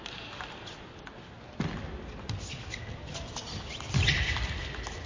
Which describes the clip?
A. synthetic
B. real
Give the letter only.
B